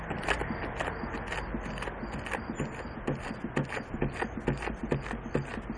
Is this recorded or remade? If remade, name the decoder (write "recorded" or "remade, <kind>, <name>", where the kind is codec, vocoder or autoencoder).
recorded